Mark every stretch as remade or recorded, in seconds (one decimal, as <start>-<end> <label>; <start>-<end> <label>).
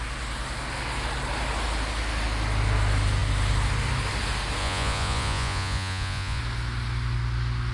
0.0-4.6 recorded; 4.6-6.4 remade; 6.4-7.7 recorded